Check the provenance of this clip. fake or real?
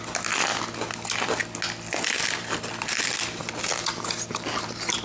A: real